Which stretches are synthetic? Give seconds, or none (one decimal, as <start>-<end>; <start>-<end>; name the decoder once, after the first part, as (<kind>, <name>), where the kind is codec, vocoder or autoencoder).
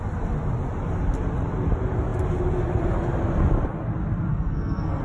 4.3-5.0 (codec, SNAC)